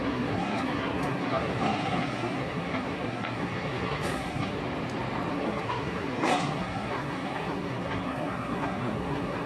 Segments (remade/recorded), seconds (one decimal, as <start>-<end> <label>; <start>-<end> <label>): 0.0-4.6 remade; 4.6-5.3 recorded; 5.3-9.5 remade